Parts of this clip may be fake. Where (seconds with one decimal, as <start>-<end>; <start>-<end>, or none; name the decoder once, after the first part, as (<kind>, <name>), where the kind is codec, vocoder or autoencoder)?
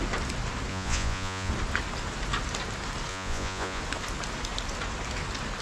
0.7-1.5 (vocoder, Vocos); 3.1-3.8